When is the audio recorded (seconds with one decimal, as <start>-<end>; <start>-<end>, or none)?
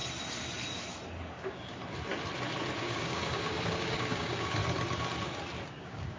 0.0-1.2; 1.8-2.8; 4.6-5.7